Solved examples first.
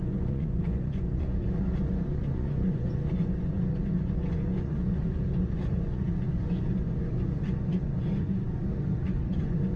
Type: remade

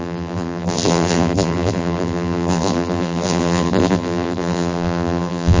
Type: remade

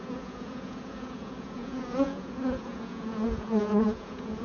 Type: remade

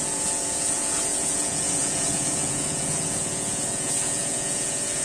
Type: remade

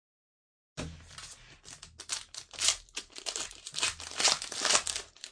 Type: recorded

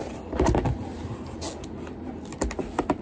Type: recorded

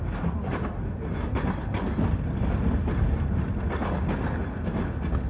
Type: recorded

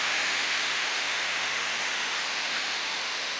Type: remade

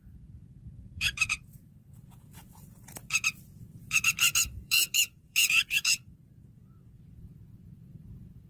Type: remade